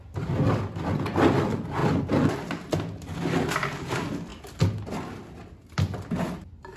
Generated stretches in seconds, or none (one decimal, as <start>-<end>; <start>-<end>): none